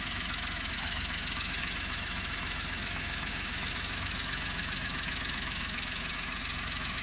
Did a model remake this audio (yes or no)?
yes